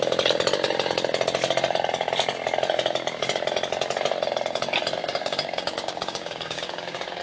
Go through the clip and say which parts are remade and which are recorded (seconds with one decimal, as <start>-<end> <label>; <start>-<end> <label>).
0.0-5.0 recorded; 5.0-7.2 remade